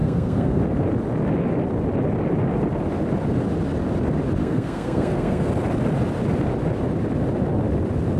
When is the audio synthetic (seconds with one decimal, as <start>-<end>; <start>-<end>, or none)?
0.0-0.6; 4.4-5.5